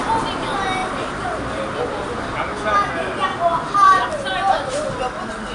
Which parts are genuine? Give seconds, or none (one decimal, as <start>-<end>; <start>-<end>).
0.0-5.5